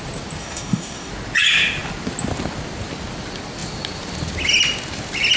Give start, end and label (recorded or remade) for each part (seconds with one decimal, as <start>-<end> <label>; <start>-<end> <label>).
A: 0.0-0.4 recorded; 0.4-1.1 remade; 1.1-5.4 recorded